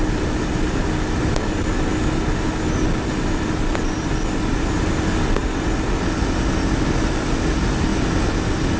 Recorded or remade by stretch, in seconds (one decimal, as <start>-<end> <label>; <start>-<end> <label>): 0.0-8.8 recorded